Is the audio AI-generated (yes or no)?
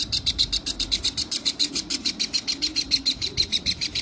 yes